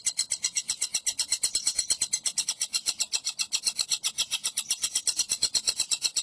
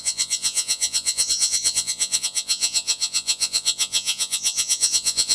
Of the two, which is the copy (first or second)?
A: second